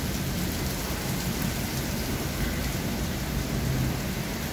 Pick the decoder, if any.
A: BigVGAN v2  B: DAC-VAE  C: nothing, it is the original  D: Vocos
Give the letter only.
C